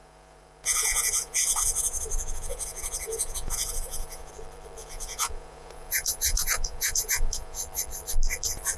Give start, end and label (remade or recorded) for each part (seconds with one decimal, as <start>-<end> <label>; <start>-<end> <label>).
0.0-4.3 remade; 4.3-4.8 recorded; 4.8-7.6 remade; 7.6-8.8 recorded